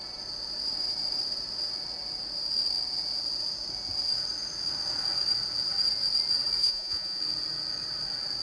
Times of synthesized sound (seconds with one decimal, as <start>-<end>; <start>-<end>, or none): 6.6-7.2